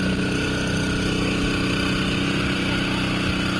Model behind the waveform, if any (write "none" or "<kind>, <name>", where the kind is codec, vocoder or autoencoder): none